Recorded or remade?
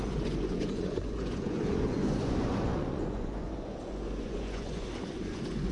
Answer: remade